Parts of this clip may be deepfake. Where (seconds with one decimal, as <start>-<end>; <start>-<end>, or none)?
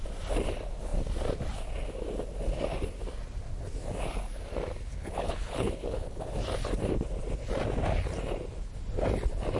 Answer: 4.9-6.2